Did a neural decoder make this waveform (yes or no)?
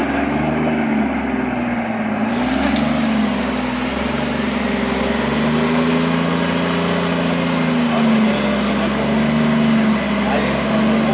no